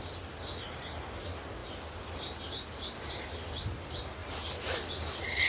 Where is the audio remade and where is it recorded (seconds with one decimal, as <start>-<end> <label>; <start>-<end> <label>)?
0.0-5.5 recorded